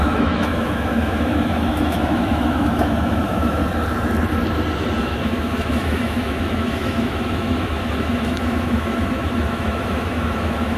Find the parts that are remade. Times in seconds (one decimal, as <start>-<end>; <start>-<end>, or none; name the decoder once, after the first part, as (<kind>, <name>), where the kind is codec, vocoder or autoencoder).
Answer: 0.0-3.6 (autoencoder, DAC-VAE); 5.0-10.8